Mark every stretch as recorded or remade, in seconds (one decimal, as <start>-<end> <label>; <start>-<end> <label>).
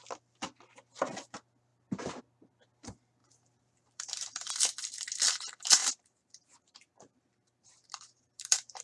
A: 0.0-1.7 recorded; 1.7-2.2 remade; 2.2-3.2 recorded; 3.2-4.5 remade; 4.5-5.8 recorded; 5.8-8.8 remade